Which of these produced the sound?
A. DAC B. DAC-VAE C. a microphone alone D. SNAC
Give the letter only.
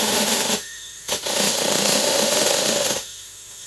B